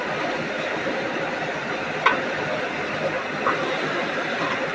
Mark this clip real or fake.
real